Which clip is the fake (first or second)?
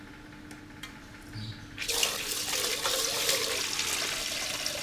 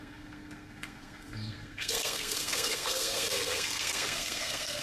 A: second